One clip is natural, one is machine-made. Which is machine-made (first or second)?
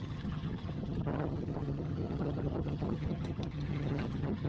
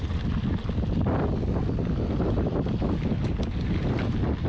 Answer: first